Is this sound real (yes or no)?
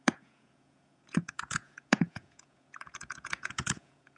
no